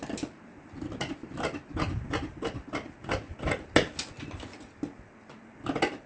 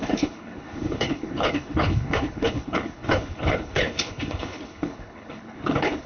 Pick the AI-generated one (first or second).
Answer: second